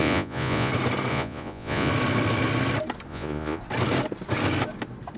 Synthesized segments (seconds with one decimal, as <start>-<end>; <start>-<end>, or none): 0.0-0.7; 1.1-1.9; 3.1-3.6